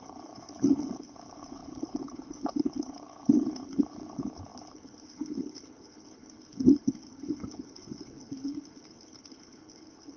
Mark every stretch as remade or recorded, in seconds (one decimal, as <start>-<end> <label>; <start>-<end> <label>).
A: 0.0-10.2 remade